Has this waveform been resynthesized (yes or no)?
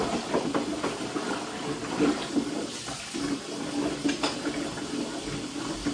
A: no